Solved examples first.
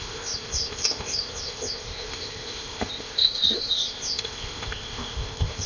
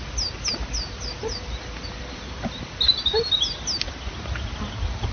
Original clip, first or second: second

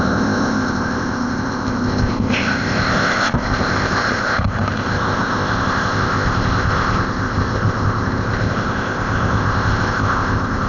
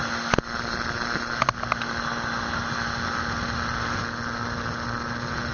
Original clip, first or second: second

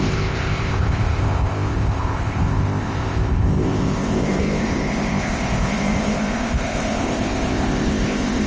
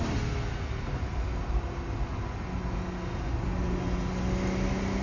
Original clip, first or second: second